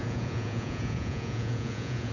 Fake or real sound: fake